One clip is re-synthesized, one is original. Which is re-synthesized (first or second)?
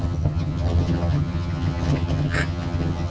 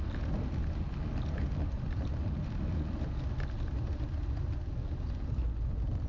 first